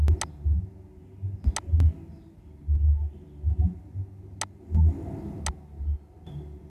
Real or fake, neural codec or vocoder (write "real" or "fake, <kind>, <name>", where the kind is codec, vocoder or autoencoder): real